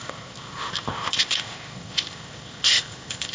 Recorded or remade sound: remade